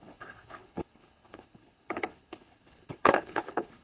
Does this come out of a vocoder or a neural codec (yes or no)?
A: yes